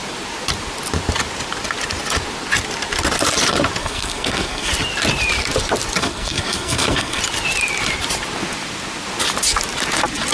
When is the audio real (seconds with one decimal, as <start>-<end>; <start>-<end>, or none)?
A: 0.0-3.8; 4.7-6.0; 7.2-10.3